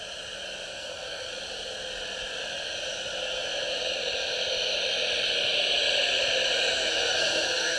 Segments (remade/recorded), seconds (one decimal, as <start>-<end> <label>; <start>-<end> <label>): 0.0-0.7 recorded; 0.7-1.3 remade; 1.3-6.7 recorded; 6.7-7.8 remade